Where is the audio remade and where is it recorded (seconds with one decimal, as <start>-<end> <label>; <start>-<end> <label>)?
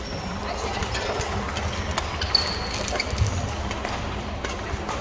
0.0-5.0 recorded